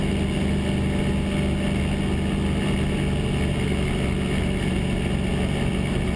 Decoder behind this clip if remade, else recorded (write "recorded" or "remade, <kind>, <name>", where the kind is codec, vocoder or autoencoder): recorded